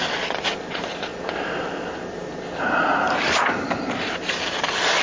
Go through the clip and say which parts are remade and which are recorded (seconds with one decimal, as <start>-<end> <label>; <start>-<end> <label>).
0.0-5.0 recorded